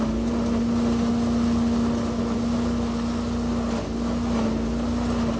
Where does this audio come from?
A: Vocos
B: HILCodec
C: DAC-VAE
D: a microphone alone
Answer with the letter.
D